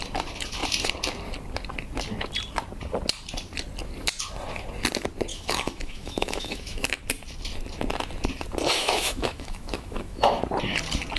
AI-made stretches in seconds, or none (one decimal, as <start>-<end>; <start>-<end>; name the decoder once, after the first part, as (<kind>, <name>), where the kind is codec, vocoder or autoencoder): 5.3-7.0 (autoencoder, DAC-VAE); 8.8-10.4

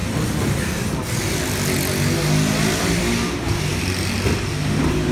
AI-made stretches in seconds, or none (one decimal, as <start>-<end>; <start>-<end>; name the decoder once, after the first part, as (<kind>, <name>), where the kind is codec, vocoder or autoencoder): none

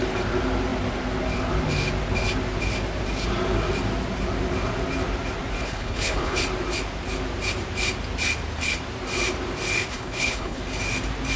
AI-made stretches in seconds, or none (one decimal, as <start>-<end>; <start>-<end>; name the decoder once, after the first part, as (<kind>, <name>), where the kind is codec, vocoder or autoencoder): 5.6-6.4 (codec, HILCodec); 9.9-10.6